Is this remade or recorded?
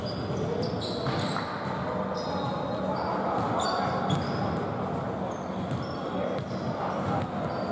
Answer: recorded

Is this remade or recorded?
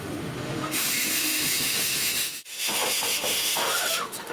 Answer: remade